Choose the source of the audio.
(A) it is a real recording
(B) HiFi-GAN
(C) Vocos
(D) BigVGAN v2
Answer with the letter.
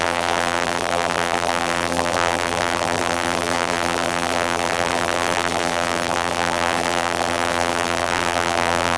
D